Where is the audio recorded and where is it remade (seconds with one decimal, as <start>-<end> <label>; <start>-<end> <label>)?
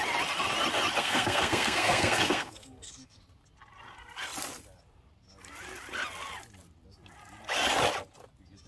0.0-1.0 recorded; 1.0-3.2 remade; 3.2-8.7 recorded